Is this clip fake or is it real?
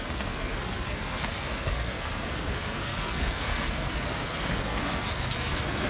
fake